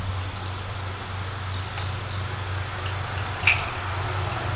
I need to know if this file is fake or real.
real